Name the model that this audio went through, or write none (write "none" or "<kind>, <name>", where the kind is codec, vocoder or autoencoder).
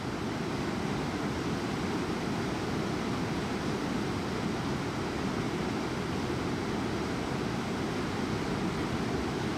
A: none